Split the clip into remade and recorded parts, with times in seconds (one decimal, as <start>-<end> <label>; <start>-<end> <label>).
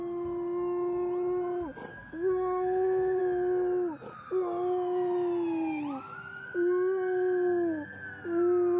0.0-1.9 recorded; 1.9-3.2 remade; 3.2-8.8 recorded